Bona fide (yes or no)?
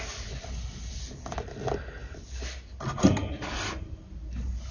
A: yes